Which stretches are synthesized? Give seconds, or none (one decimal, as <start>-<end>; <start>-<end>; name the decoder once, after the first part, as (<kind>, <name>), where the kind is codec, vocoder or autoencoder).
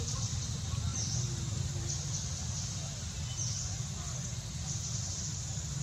none